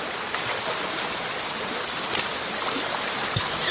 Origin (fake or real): real